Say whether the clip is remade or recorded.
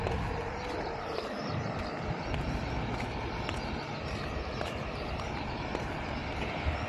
recorded